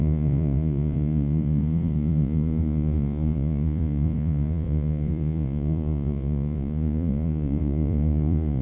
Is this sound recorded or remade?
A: remade